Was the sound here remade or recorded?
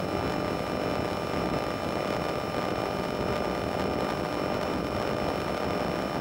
recorded